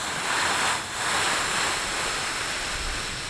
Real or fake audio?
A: real